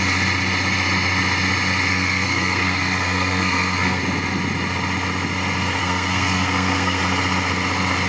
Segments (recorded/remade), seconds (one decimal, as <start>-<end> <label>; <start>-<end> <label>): 0.0-1.9 recorded; 1.9-4.0 remade; 4.0-5.8 recorded; 5.8-7.0 remade; 7.0-8.1 recorded